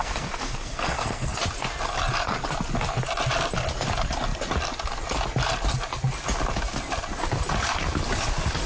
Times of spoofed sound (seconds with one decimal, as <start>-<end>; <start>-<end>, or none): 0.0-1.4